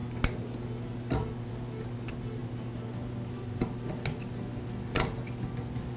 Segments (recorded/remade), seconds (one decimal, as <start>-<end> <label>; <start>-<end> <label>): 0.0-2.4 recorded; 2.4-3.5 remade; 3.5-6.0 recorded